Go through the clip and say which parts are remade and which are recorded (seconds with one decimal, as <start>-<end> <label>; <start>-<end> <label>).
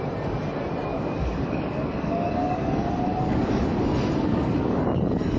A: 0.0-0.9 recorded; 0.9-3.8 remade; 3.8-4.3 recorded; 4.3-4.8 remade; 4.8-5.4 recorded